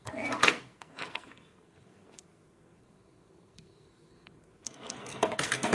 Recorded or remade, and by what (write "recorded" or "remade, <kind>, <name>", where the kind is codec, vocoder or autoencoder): remade, codec, SNAC